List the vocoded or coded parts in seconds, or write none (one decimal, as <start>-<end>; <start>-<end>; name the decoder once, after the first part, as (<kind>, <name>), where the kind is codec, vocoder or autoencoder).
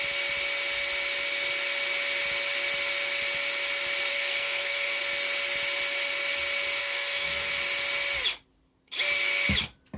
4.1-5.0 (codec, SNAC); 6.8-7.5